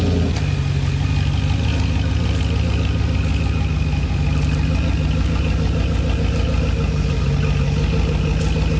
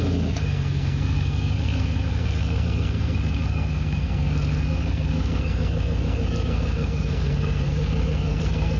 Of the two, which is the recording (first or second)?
first